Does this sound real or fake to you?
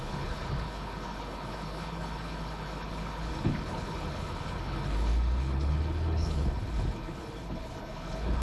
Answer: fake